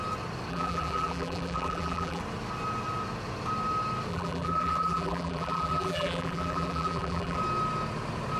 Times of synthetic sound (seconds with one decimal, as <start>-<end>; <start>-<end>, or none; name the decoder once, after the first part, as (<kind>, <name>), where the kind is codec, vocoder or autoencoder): 0.5-2.2 (vocoder, BigVGAN v2); 4.1-7.4